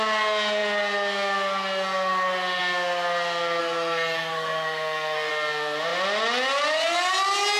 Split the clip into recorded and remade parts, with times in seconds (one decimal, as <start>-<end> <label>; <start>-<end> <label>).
0.0-3.6 recorded; 3.6-5.3 remade; 5.3-7.6 recorded